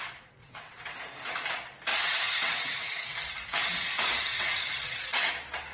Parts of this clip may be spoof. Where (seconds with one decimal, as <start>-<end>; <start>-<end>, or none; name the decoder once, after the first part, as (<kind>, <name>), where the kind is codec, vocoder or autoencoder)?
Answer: 0.4-1.0 (vocoder, WaveNeXt); 1.9-5.3